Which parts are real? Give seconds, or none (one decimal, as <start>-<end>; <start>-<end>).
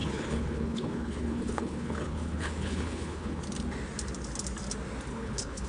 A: 3.4-5.1